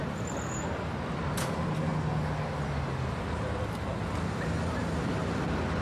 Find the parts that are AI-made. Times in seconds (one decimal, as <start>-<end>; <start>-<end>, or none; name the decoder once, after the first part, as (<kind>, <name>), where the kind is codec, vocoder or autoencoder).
none